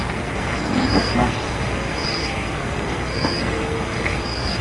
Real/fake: fake